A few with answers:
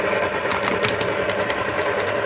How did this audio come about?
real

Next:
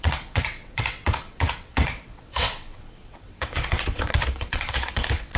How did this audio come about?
fake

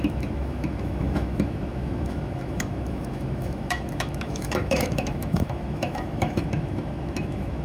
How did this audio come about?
fake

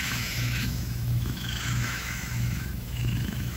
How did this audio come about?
fake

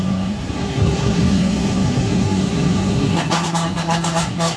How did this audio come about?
fake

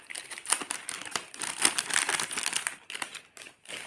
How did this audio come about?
real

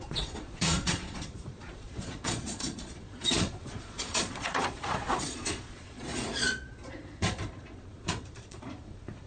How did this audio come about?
fake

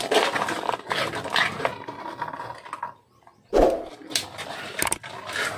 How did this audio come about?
real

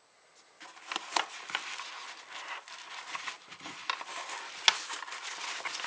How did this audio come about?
real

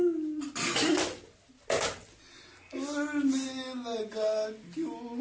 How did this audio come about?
real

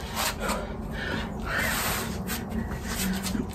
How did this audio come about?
real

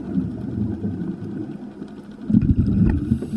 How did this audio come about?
real